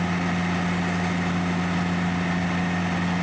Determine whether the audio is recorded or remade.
recorded